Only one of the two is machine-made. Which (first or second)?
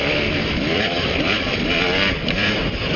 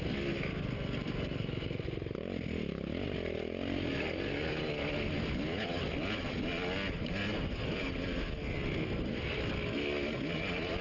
first